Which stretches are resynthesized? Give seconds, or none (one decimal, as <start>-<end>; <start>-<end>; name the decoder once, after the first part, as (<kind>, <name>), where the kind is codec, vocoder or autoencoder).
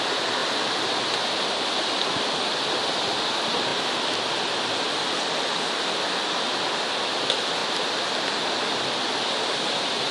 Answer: none